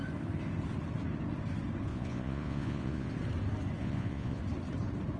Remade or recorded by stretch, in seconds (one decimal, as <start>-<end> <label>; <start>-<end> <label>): 0.0-1.9 recorded; 1.9-3.1 remade; 3.1-3.8 recorded; 3.8-4.4 remade; 4.4-5.2 recorded